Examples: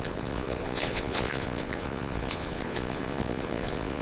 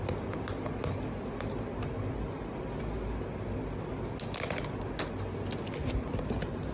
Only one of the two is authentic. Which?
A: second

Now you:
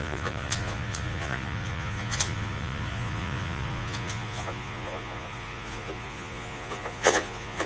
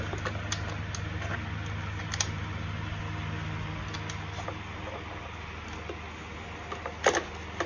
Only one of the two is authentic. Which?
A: second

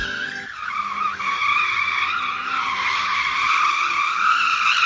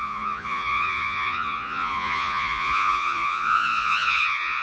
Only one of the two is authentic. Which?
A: first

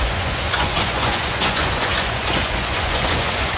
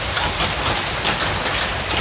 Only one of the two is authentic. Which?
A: second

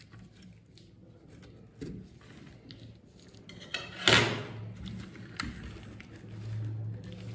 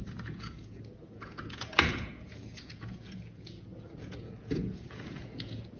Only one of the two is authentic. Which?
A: first